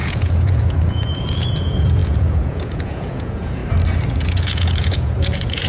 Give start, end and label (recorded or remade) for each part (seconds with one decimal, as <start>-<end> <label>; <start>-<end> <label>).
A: 0.0-3.6 remade; 3.6-4.1 recorded; 4.1-5.7 remade